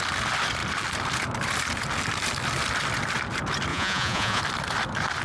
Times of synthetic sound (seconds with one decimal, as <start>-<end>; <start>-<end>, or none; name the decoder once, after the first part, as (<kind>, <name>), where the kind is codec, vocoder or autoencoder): 3.7-4.4 (vocoder, Vocos)